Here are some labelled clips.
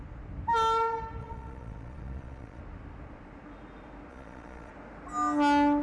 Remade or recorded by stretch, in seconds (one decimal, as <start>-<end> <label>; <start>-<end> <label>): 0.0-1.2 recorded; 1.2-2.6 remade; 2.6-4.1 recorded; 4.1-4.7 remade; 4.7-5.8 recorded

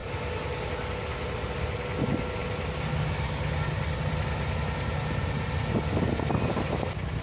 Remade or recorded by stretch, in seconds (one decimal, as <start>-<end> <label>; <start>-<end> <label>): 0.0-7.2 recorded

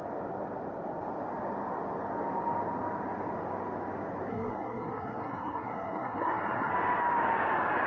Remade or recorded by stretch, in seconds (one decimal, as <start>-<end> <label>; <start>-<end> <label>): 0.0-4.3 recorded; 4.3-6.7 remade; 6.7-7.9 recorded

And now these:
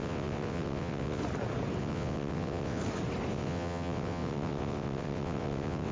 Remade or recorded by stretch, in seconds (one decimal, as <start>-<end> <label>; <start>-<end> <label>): 0.0-1.2 remade; 1.2-1.8 recorded; 1.8-2.8 remade; 2.8-3.3 recorded; 3.3-5.9 remade

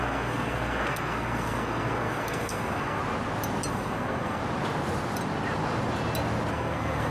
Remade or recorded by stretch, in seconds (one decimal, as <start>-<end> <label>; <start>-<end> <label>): 0.0-3.0 remade; 3.0-3.7 recorded; 3.7-4.4 remade; 4.4-6.5 recorded; 6.5-7.1 remade

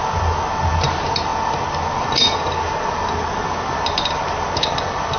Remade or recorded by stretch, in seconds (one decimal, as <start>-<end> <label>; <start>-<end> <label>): 0.0-5.2 recorded

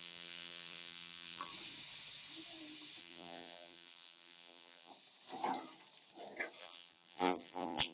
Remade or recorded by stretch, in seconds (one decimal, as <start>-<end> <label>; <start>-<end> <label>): 0.0-1.5 remade; 1.5-3.0 recorded; 3.0-4.9 remade; 4.9-6.6 recorded; 6.6-7.9 remade

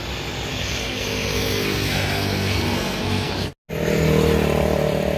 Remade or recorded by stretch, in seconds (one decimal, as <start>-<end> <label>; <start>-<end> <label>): 0.0-0.5 recorded; 0.5-3.5 remade; 3.5-5.2 recorded